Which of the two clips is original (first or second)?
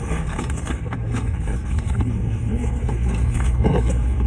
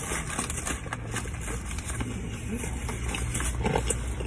second